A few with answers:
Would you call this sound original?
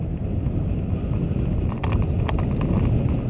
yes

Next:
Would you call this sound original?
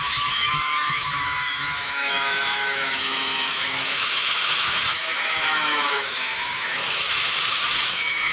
no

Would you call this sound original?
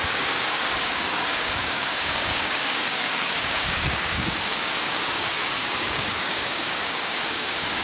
no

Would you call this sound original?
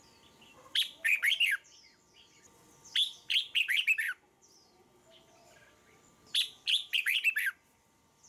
yes